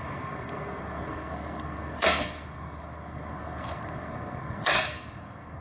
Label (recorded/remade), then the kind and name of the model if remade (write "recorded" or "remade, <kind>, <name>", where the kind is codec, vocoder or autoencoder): remade, codec, SNAC